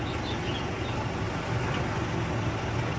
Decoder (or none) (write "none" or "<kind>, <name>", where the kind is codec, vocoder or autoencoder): none